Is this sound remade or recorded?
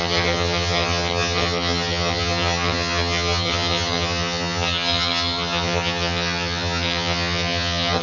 remade